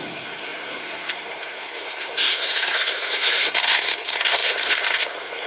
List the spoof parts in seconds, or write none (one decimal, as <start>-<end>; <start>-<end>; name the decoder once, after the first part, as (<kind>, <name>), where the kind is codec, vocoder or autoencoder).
0.0-5.5 (codec, SNAC)